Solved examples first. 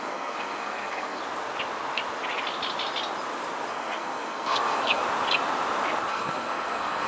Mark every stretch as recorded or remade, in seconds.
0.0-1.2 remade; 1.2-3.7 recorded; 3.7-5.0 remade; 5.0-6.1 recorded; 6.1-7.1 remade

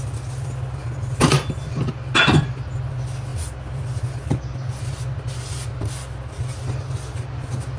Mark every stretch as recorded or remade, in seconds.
0.0-7.8 recorded

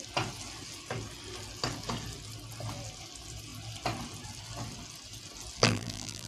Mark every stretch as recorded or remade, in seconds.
0.0-5.6 recorded; 5.6-6.3 remade

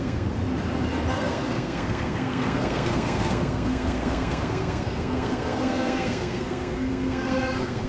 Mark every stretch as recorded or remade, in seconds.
0.0-0.4 remade; 0.4-1.1 recorded; 1.1-7.9 remade

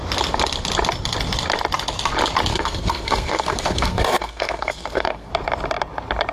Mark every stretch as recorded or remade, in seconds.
0.0-2.5 recorded; 2.5-5.3 remade; 5.3-6.3 recorded